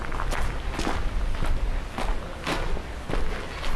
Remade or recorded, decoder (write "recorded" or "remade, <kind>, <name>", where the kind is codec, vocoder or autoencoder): recorded